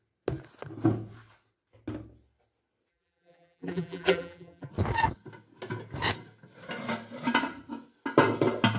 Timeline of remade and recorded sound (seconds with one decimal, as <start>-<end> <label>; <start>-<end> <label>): 0.0-2.9 recorded; 2.9-4.7 remade; 4.7-8.8 recorded